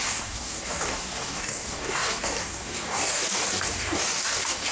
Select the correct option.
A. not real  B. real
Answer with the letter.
A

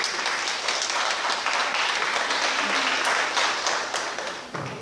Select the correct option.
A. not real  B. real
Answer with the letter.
B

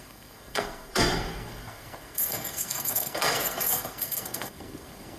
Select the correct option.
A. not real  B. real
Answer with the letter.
A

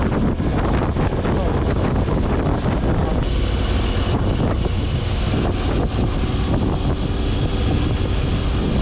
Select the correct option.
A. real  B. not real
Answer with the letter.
A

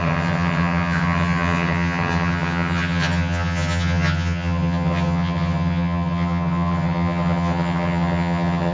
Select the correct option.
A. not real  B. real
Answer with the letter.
A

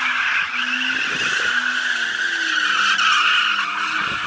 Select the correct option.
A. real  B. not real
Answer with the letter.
A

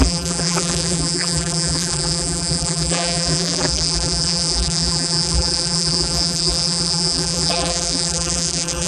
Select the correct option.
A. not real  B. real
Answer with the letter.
A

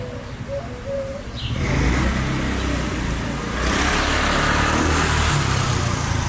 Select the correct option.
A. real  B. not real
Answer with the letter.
A